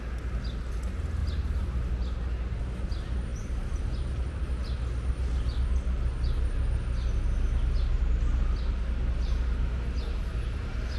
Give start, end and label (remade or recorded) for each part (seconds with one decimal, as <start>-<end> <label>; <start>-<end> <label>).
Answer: 0.0-3.3 recorded; 3.3-4.1 remade; 4.1-11.0 recorded